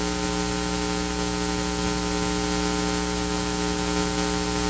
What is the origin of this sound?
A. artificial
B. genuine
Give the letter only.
B